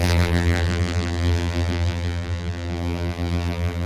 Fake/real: fake